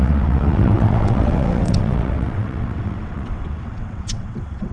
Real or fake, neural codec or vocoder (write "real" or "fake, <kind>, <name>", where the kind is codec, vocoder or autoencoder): fake, vocoder, WaveNeXt